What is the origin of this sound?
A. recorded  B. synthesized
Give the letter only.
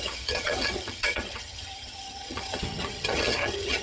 B